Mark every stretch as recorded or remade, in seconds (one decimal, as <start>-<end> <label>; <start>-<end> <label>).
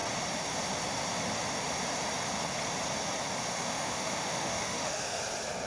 0.0-3.5 recorded; 3.5-5.2 remade; 5.2-5.7 recorded